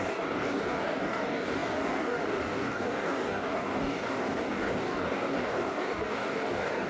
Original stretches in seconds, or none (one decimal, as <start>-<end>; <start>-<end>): none